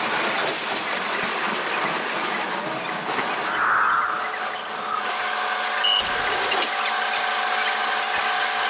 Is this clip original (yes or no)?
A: yes